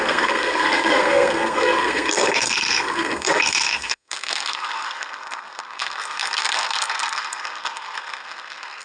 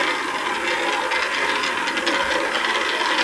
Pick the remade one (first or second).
first